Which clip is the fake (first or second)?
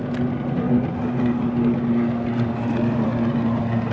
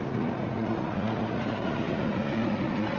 second